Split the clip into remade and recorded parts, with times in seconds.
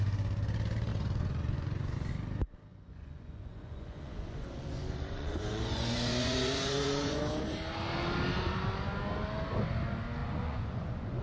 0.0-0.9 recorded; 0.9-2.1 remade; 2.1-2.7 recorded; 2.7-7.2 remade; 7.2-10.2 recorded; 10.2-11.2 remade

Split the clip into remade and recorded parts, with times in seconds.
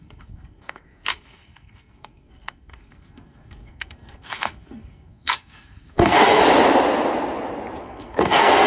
0.0-6.4 remade; 6.4-7.8 recorded; 7.8-8.7 remade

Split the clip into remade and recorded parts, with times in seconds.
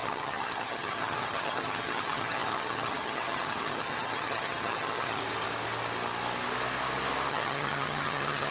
0.0-5.2 remade; 5.2-7.3 recorded; 7.3-8.5 remade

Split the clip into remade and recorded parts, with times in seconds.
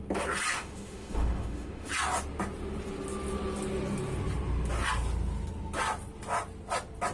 0.0-0.5 recorded; 0.5-1.9 remade; 1.9-7.1 recorded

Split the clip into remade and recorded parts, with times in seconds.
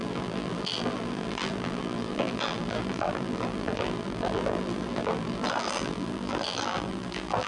0.0-7.5 remade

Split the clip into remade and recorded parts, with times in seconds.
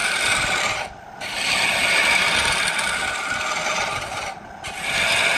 0.0-5.4 recorded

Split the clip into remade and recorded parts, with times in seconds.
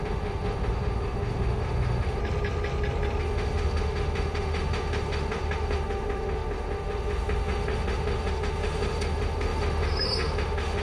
0.0-2.2 remade; 2.2-3.2 recorded; 3.2-10.8 remade